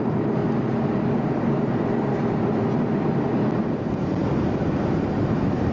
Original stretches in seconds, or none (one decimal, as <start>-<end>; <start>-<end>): 0.4-3.8; 4.2-4.8